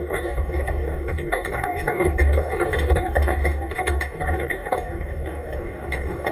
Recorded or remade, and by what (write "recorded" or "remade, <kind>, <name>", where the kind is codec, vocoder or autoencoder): remade, codec, DAC